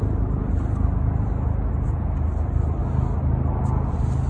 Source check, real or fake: real